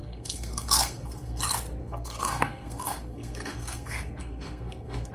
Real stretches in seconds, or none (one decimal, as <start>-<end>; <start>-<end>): 1.4-1.8